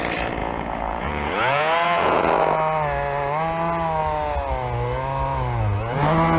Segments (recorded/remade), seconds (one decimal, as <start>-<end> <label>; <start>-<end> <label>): 0.0-0.4 recorded; 0.4-2.2 remade; 2.2-6.4 recorded